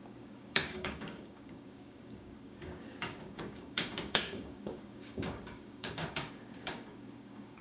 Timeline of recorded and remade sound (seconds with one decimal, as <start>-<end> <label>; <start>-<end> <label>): 0.0-7.6 remade